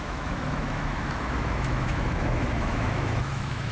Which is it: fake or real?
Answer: fake